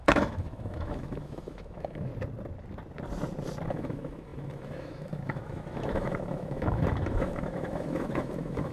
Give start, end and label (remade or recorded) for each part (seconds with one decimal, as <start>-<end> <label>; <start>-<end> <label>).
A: 0.0-2.1 remade; 2.1-3.7 recorded; 3.7-8.7 remade